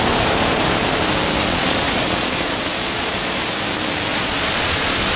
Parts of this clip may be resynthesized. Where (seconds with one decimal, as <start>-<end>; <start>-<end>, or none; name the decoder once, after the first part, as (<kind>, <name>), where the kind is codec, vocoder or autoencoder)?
1.5-3.4 (vocoder, Vocos); 4.1-5.2